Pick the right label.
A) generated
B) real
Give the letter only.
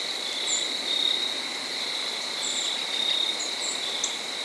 A